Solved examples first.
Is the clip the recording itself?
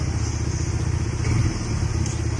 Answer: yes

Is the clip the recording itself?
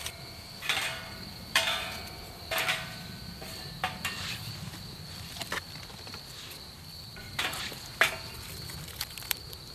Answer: no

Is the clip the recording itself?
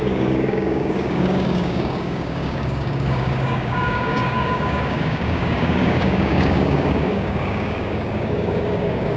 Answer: no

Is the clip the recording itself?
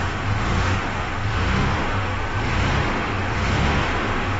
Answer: no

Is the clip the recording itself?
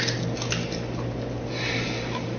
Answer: yes